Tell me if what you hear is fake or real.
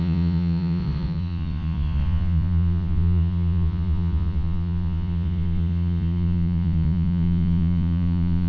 fake